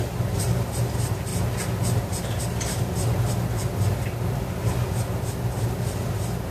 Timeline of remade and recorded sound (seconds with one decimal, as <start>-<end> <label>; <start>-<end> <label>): 0.0-6.5 remade